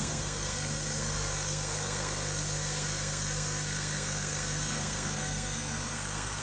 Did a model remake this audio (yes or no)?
yes